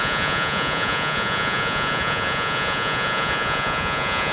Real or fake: fake